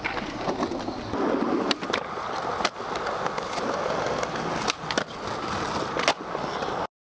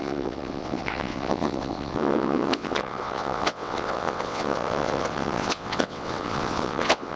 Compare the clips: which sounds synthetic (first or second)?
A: second